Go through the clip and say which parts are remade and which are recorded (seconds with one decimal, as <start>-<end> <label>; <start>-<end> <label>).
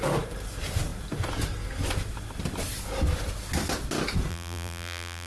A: 0.0-4.3 recorded; 4.3-5.3 remade